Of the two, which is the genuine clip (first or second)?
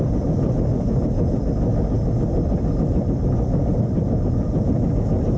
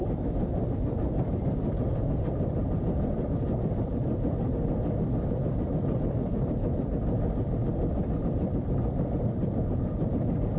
first